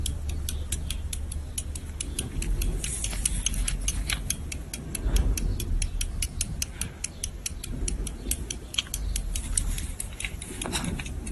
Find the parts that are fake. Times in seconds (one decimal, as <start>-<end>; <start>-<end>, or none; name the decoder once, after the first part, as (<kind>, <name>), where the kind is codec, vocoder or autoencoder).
none